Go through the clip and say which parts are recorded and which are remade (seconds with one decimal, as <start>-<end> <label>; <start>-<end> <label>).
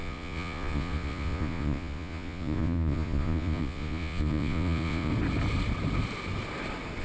0.0-5.1 remade; 5.1-7.0 recorded